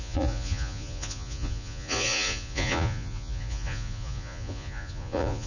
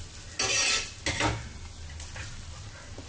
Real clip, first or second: second